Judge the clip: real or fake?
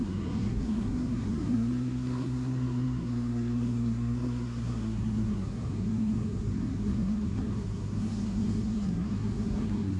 fake